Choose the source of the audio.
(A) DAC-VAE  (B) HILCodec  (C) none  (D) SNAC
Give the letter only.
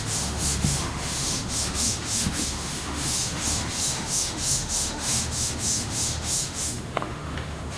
A